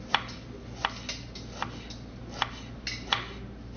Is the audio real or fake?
real